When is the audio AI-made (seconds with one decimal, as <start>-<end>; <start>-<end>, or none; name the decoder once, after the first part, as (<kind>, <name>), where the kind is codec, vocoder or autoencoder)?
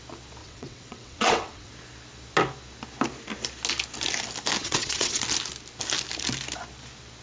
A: 0.4-1.7 (vocoder, WaveNeXt); 4.6-5.2